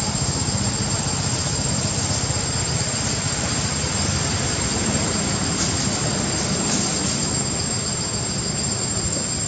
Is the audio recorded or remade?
remade